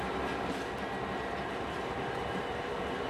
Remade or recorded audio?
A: recorded